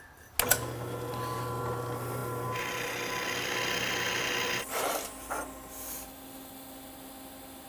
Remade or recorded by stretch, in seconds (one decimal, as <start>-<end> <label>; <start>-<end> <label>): 0.0-7.7 recorded